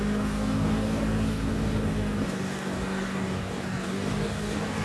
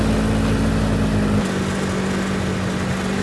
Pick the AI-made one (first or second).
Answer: first